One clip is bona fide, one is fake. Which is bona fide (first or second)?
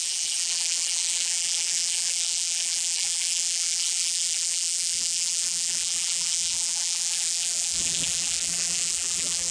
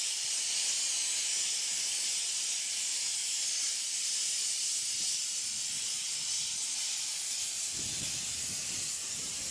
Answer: second